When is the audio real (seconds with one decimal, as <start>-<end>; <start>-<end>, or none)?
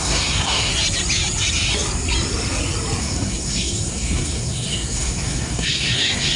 0.7-3.0